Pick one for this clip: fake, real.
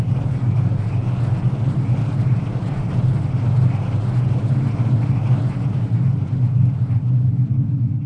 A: real